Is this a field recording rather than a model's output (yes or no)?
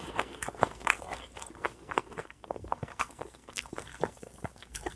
no